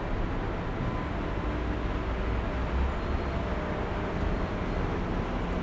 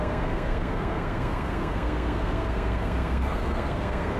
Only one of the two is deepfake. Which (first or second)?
second